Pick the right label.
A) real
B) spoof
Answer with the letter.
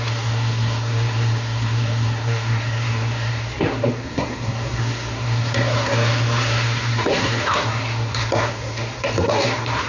B